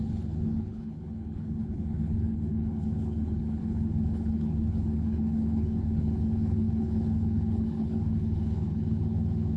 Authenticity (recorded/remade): remade